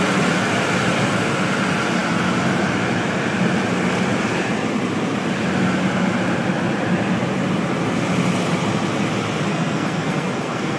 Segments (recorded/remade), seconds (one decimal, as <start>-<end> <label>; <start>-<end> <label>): 0.0-9.5 recorded; 9.5-10.8 remade